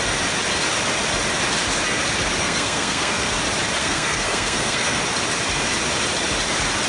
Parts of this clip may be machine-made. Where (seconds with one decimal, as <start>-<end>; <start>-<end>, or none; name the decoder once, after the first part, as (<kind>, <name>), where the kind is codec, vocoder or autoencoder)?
2.4-3.3 (codec, SNAC); 3.8-5.0